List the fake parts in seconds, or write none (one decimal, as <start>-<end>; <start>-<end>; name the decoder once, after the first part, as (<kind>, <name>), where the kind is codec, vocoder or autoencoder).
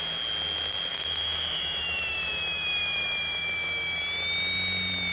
0.9-4.0 (autoencoder, DAC-VAE)